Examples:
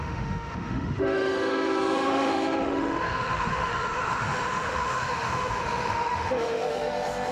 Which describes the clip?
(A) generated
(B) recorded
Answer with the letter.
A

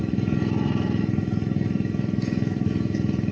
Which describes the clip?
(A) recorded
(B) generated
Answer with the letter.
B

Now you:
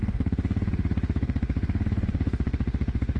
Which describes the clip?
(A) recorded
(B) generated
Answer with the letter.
B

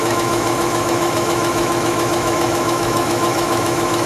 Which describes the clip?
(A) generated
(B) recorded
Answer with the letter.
A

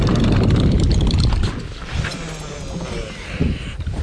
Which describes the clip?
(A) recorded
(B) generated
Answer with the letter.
A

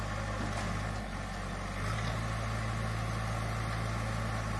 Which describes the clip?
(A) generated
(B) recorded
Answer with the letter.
B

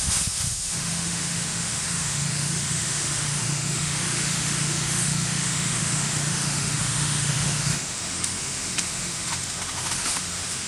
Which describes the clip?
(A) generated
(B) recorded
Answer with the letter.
A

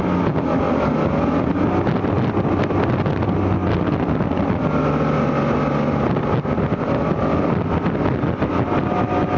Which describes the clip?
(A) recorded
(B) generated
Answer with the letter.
A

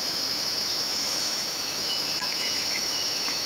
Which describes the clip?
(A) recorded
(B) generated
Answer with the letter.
B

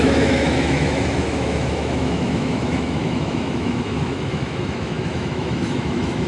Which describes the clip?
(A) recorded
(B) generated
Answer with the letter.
B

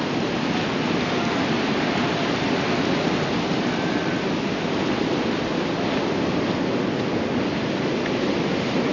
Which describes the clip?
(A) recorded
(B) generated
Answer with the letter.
A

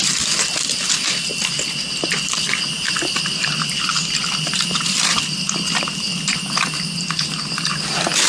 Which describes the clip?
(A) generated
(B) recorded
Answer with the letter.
B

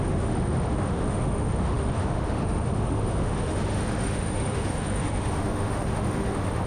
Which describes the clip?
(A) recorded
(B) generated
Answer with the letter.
B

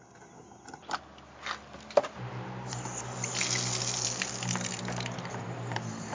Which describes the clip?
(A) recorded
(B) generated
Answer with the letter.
A